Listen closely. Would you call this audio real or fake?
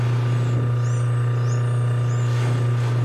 real